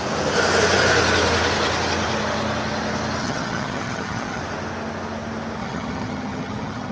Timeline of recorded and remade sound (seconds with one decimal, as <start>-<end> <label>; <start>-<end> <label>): 0.0-3.2 recorded; 3.2-4.4 remade; 4.4-5.6 recorded; 5.6-6.9 remade